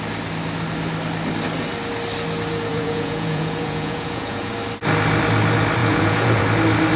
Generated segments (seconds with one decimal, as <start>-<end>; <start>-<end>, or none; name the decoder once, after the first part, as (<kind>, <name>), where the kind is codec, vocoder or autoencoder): 2.7-4.5 (vocoder, Vocos); 5.8-6.4